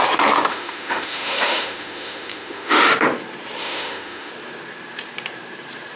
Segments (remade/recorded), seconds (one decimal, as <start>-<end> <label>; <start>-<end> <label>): 0.0-0.5 recorded; 0.5-2.9 remade; 2.9-3.6 recorded; 3.6-4.3 remade; 4.3-6.0 recorded